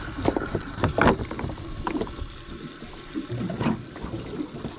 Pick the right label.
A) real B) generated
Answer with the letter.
A